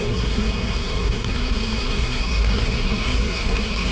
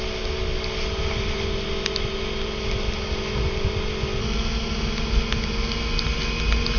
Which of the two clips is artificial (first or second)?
first